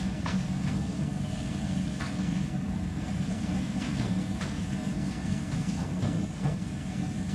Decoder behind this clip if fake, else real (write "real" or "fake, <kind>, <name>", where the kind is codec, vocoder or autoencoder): fake, codec, SNAC